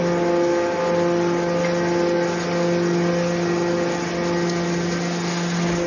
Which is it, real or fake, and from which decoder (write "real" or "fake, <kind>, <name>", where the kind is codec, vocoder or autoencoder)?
real